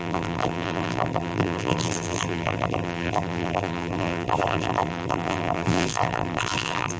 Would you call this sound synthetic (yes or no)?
yes